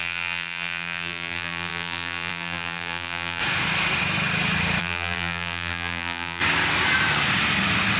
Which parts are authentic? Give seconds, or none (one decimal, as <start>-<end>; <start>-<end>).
3.4-4.8; 6.4-8.0